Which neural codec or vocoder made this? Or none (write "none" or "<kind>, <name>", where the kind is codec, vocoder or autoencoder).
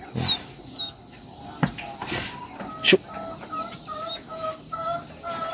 none